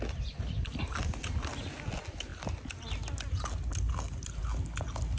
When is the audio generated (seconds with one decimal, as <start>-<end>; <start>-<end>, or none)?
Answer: none